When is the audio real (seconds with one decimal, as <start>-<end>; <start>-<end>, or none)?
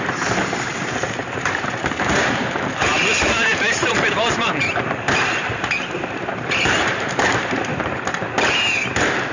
3.0-3.5; 8.2-8.7